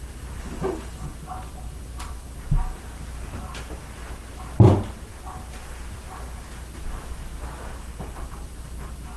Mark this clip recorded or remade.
recorded